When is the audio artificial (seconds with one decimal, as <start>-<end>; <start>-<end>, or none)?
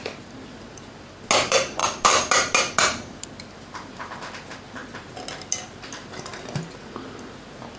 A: none